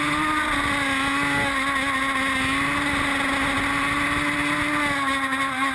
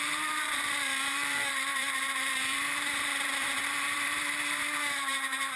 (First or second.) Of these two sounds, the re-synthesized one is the second